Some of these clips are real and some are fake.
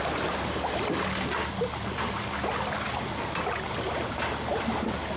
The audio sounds real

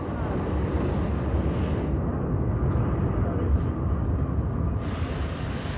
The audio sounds real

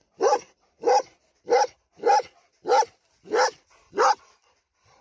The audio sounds real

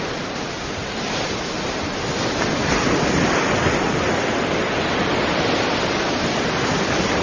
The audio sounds real